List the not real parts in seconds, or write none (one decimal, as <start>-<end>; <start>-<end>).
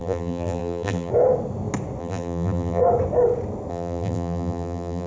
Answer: 0.0-1.1; 2.0-2.8; 3.7-5.1